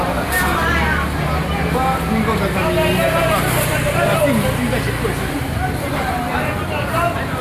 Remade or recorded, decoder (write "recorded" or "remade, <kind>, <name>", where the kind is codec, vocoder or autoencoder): recorded